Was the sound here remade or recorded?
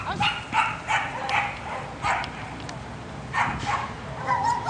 recorded